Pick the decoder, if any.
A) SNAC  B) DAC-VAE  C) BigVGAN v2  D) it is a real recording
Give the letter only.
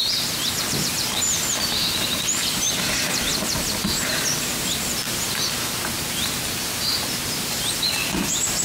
C